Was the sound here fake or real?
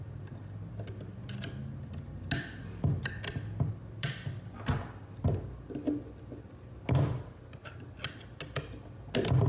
real